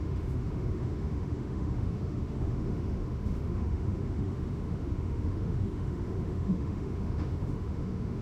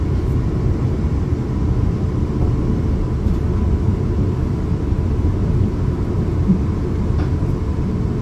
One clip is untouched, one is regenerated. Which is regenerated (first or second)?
first